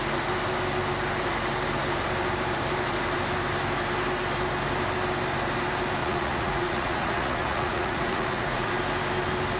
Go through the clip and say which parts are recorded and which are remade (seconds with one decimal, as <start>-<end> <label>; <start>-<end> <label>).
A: 0.0-6.0 recorded; 6.0-8.7 remade; 8.7-9.6 recorded